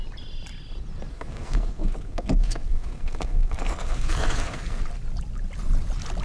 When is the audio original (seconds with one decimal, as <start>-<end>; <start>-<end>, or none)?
0.0-1.1; 4.8-6.2